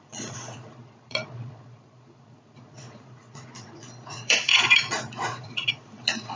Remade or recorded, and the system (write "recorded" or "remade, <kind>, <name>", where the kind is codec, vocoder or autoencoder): remade, vocoder, Vocos